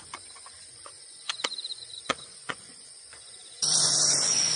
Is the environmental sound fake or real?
fake